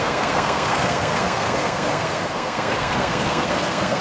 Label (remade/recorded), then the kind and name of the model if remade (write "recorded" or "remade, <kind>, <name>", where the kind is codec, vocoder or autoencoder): remade, codec, SNAC